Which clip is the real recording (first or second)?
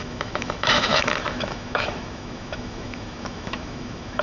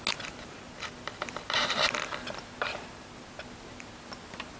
second